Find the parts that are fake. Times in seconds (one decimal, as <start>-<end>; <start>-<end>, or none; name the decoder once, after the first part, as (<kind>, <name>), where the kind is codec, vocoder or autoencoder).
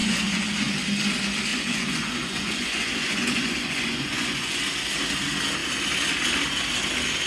0.0-0.7 (vocoder, Vocos); 1.5-4.6